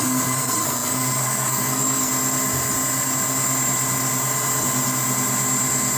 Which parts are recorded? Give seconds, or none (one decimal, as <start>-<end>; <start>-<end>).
2.1-6.0